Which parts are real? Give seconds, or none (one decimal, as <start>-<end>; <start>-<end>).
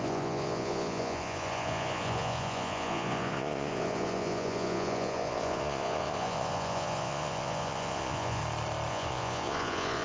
8.4-8.9